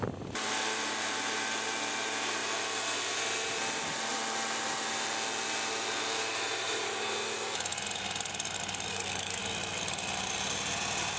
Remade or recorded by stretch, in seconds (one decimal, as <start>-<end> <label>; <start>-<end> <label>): 0.0-8.9 recorded; 8.9-9.4 remade; 9.4-11.2 recorded